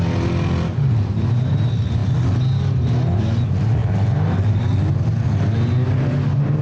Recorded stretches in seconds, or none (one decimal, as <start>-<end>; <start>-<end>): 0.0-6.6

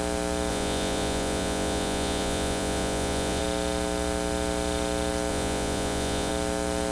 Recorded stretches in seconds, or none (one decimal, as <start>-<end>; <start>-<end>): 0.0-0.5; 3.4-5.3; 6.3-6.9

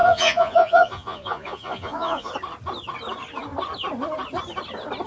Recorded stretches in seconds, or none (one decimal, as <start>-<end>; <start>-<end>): 2.3-5.1

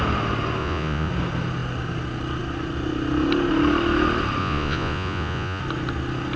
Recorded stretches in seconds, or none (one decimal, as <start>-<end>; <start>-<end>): 0.0-0.6; 1.1-4.4; 5.6-6.4

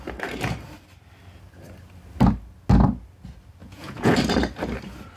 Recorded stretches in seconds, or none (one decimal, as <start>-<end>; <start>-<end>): 0.0-3.6; 4.1-5.2